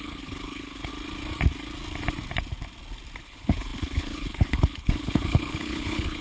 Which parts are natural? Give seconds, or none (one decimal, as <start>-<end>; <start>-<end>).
0.9-3.2